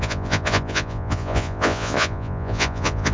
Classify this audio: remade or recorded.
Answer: remade